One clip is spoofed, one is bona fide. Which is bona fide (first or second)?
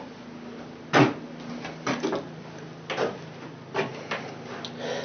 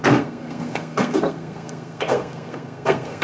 first